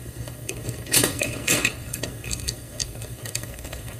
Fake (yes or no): yes